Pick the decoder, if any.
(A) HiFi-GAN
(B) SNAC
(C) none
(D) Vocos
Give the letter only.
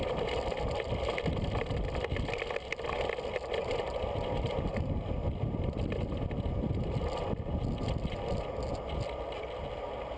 C